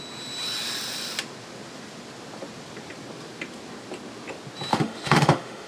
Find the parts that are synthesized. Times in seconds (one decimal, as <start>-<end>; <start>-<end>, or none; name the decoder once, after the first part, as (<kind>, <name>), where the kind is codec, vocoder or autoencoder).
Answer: 4.7-5.7 (autoencoder, DAC-VAE)